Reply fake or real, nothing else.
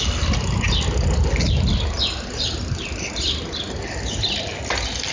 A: real